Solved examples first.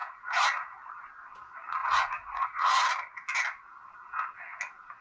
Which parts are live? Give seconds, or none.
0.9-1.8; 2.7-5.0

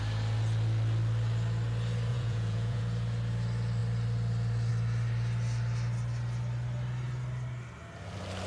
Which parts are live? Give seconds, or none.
0.0-2.1; 2.8-8.5

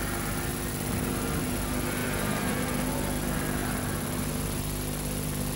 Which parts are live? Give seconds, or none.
0.0-2.0; 2.6-5.6